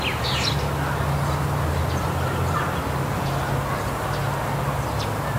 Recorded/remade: recorded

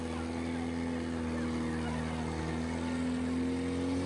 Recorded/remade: recorded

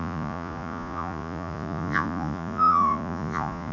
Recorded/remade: remade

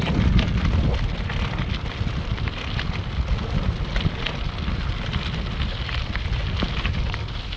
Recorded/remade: recorded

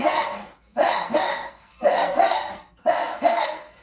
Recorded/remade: remade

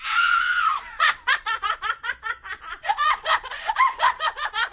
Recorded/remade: remade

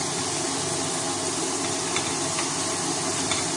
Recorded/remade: recorded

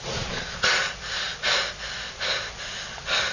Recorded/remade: recorded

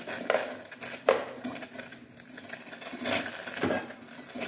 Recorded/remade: recorded